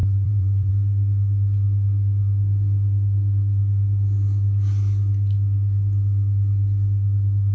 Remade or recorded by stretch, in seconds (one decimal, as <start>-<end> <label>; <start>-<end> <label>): 0.0-0.7 remade; 0.7-7.5 recorded

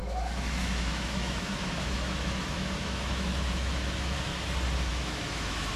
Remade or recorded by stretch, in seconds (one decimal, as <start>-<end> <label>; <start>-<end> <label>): 0.0-4.3 remade; 4.3-4.9 recorded; 4.9-5.8 remade

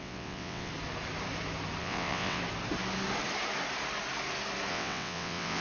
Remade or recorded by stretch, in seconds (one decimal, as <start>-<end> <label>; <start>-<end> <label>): 0.0-0.7 remade; 0.7-1.8 recorded; 1.8-2.4 remade; 2.4-4.7 recorded; 4.7-5.6 remade

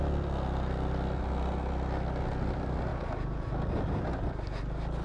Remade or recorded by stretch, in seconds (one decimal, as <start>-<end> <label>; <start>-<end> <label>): 0.0-2.9 recorded; 2.9-3.5 remade; 3.5-5.0 recorded

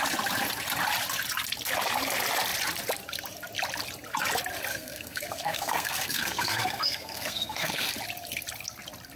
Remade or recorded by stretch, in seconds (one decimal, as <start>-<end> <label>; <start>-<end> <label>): 0.0-4.7 recorded; 4.7-7.9 remade; 7.9-9.2 recorded

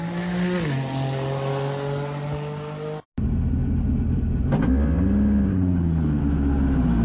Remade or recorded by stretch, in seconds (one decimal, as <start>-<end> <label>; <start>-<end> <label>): 0.0-5.5 recorded; 5.5-6.2 remade; 6.2-7.0 recorded

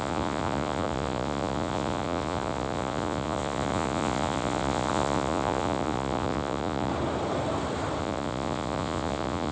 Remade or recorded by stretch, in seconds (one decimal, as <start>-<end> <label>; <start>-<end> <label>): 0.0-6.9 remade; 6.9-8.0 recorded; 8.0-9.5 remade